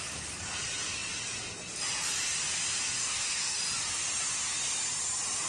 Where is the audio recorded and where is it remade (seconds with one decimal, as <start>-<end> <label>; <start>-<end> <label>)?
0.0-3.0 recorded; 3.0-3.6 remade; 3.6-5.5 recorded